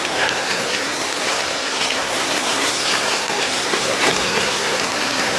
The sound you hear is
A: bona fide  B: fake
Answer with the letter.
B